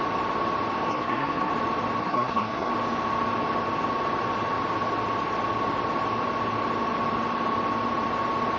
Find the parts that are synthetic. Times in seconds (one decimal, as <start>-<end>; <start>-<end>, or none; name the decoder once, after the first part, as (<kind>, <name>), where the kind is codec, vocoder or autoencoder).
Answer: 0.9-1.5 (codec, SNAC); 2.0-2.7